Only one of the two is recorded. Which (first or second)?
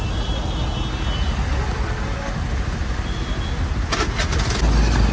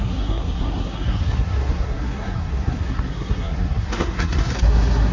first